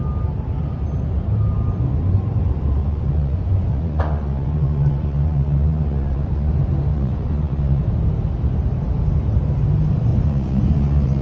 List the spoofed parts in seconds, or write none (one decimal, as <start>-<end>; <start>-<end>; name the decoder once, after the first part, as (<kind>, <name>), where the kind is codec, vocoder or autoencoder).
2.8-6.5 (vocoder, Vocos); 6.9-7.8; 10.1-11.2